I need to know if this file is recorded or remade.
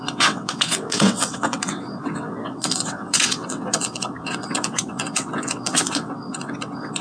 remade